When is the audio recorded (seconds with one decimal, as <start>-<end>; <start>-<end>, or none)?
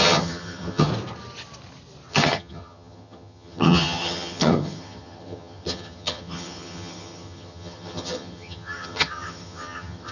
0.9-2.1